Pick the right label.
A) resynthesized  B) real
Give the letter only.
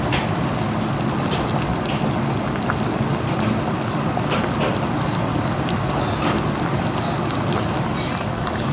B